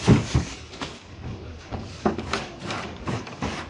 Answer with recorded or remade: remade